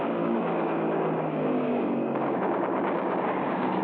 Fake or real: fake